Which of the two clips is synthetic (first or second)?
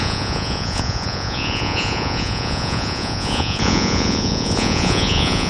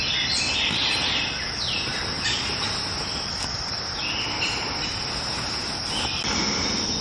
first